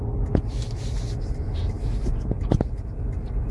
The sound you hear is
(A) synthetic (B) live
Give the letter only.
B